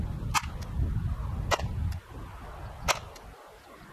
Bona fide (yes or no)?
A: yes